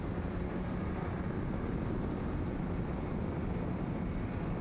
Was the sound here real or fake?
real